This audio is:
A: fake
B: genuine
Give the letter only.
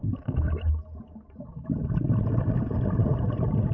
B